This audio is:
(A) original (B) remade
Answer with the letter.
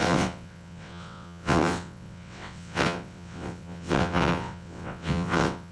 B